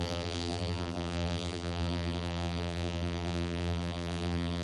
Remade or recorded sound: remade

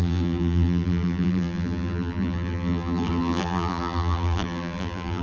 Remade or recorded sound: remade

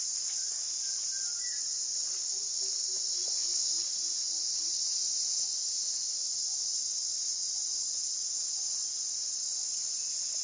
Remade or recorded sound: recorded